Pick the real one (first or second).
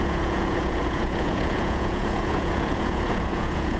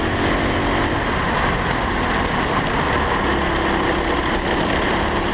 second